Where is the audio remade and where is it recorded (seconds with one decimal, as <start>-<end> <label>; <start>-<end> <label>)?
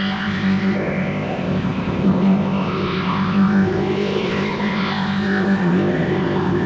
0.0-6.7 remade